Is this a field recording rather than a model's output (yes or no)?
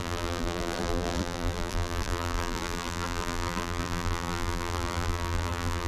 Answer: no